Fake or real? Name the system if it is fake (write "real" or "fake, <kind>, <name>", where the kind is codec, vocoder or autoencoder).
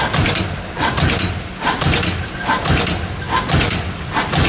fake, vocoder, BigVGAN v2